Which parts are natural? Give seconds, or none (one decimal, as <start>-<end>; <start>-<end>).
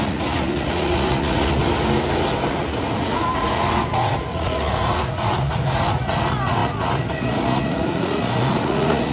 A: 1.6-2.5